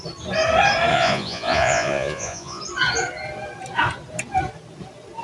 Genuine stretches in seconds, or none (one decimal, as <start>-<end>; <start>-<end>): 0.0-0.9; 2.6-5.2